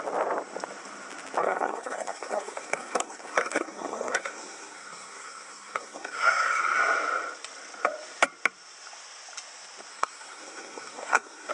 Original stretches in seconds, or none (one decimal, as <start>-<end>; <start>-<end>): 0.0-1.4; 6.6-9.9

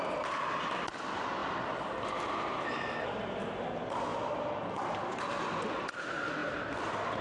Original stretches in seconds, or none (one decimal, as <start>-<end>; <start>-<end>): 0.0-7.2

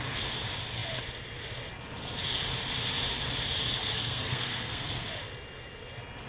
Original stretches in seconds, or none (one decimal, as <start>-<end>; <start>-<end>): 0.0-3.8; 5.1-6.3

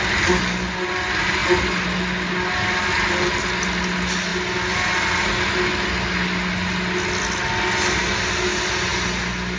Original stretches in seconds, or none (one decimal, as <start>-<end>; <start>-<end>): 0.0-9.6